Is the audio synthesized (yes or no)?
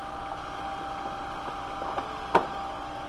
no